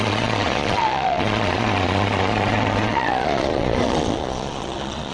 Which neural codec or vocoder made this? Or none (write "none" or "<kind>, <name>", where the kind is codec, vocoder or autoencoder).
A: vocoder, Vocos